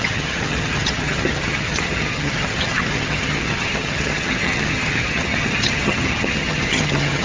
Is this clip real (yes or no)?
no